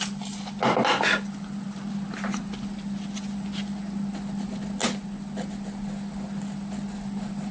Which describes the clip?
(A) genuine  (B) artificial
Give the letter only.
A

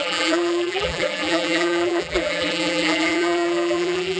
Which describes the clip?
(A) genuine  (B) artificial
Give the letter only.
B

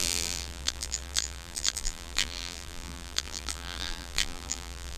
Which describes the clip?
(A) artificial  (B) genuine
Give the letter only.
A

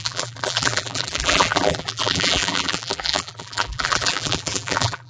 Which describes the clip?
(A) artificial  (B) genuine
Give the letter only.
A